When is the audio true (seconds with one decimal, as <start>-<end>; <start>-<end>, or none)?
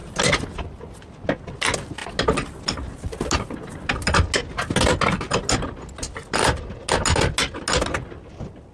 0.0-8.7